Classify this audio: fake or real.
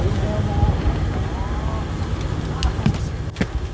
real